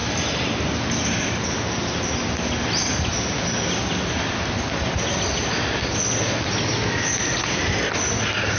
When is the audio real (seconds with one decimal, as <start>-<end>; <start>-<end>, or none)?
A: 0.0-8.6